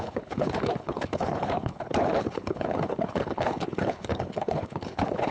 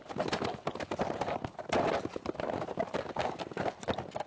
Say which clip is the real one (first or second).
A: second